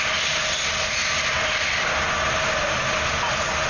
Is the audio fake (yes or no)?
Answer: no